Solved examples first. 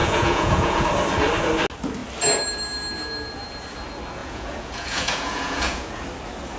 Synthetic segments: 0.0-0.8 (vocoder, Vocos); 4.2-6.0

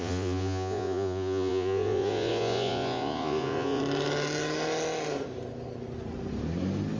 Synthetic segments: 0.0-3.8 (vocoder, Vocos)